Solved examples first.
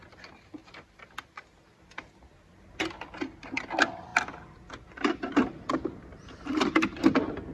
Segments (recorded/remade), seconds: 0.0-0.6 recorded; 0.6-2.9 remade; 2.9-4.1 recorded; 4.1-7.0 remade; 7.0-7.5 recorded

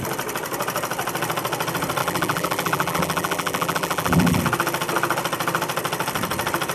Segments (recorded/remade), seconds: 0.0-2.0 recorded; 2.0-4.4 remade; 4.4-6.7 recorded

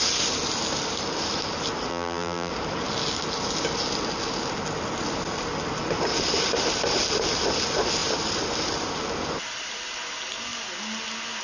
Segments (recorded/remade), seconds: 0.0-1.9 recorded; 1.9-2.5 remade; 2.5-11.4 recorded